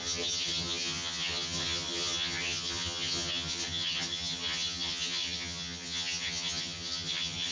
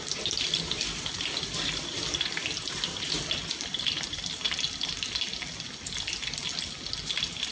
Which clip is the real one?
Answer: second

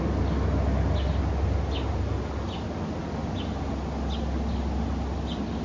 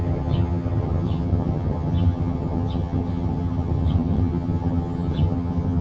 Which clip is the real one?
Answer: first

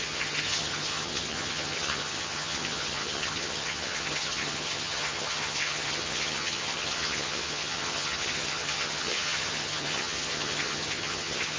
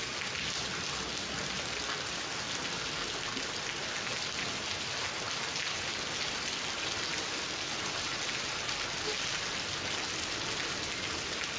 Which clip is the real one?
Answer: second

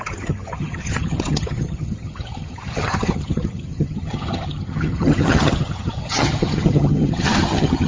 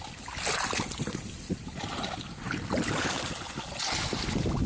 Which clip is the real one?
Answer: second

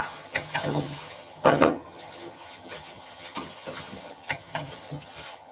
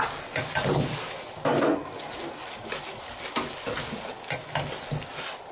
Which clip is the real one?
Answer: second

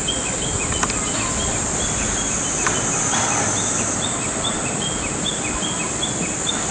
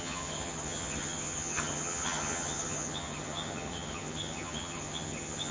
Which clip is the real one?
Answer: first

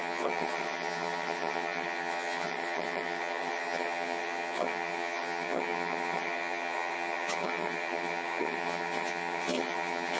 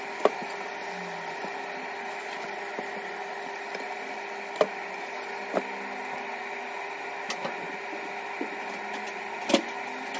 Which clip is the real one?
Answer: second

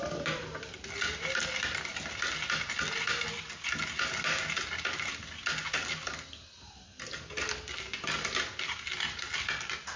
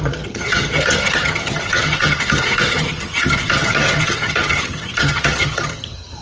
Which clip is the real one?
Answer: first